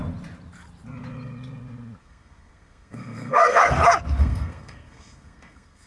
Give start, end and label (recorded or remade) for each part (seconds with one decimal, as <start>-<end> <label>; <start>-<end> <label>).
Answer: 0.0-2.0 recorded; 2.0-3.7 remade; 3.7-4.2 recorded; 4.2-5.9 remade